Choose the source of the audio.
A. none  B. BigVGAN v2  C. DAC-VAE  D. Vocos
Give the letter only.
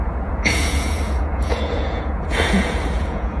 D